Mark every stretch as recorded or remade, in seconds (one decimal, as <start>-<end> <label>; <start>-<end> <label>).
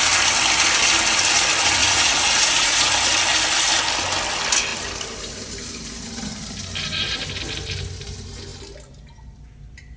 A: 0.0-1.8 recorded; 1.8-2.9 remade; 2.9-10.0 recorded